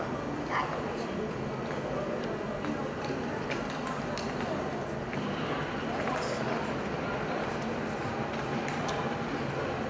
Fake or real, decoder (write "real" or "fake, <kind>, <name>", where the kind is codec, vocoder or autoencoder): fake, vocoder, BigVGAN v2